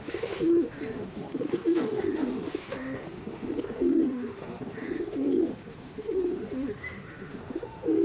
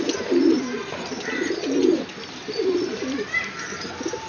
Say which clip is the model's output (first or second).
first